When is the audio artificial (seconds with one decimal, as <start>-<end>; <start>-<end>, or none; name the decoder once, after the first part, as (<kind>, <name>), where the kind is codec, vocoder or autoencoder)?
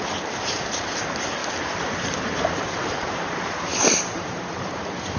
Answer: 0.0-5.2 (vocoder, BigVGAN v2)